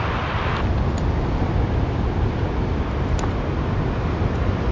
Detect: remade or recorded recorded